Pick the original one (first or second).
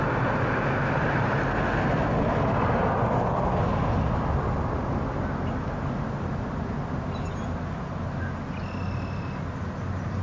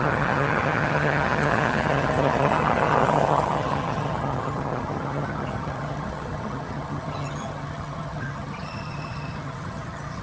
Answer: first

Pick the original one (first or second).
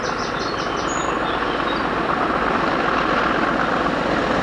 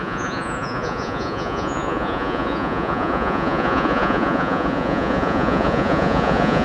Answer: first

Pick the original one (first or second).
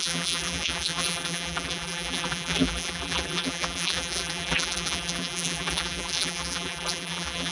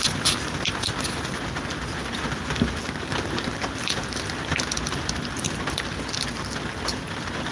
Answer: second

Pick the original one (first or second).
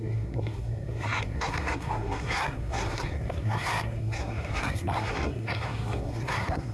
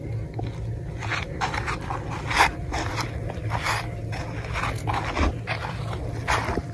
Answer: second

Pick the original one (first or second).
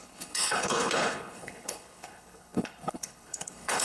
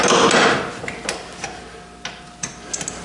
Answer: second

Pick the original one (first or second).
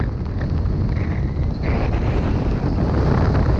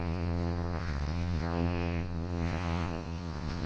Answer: first